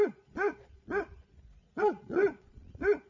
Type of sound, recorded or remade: remade